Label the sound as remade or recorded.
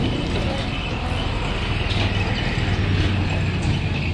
recorded